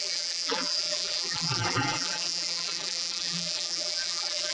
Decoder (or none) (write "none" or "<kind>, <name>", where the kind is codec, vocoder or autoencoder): vocoder, BigVGAN v2